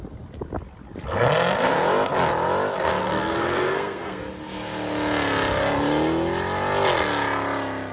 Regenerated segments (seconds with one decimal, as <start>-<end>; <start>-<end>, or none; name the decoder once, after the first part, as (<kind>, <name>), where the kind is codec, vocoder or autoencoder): 3.0-4.3 (codec, SNAC)